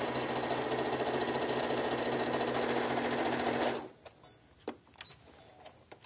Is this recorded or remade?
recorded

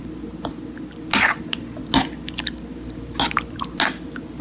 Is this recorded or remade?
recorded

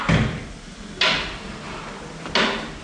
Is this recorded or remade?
recorded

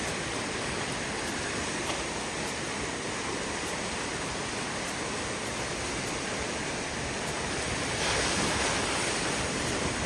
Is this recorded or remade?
recorded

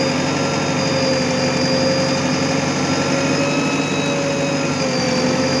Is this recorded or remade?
recorded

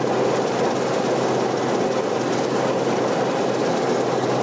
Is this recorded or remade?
recorded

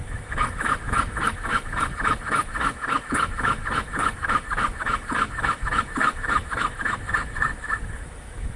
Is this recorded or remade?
remade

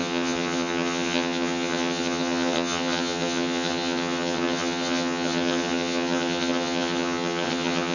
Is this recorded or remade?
remade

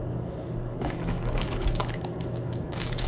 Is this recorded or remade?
remade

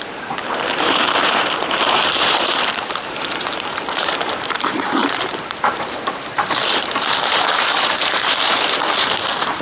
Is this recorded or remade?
remade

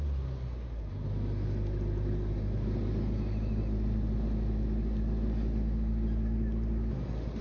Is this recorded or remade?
recorded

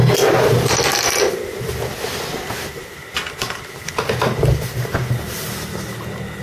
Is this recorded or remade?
recorded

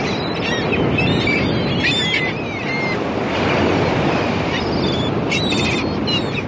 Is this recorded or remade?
recorded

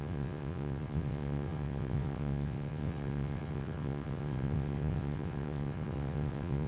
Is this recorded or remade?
remade